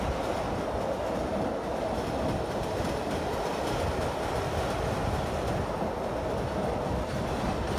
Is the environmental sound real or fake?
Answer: real